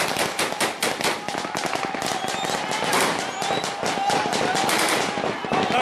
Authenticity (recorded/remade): recorded